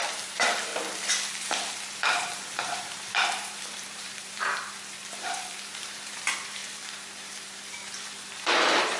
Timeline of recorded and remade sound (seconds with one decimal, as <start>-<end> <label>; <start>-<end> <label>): 0.0-0.7 remade; 0.7-1.3 recorded; 1.3-9.0 remade

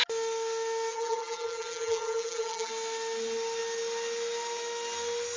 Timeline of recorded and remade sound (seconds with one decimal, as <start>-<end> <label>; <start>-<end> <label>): 0.0-0.9 recorded; 0.9-2.7 remade; 2.7-5.4 recorded

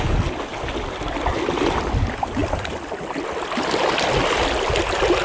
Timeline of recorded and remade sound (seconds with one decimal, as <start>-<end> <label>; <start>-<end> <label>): 0.0-5.2 recorded